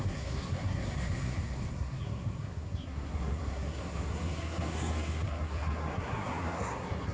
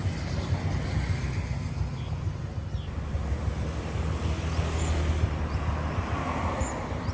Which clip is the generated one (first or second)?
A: first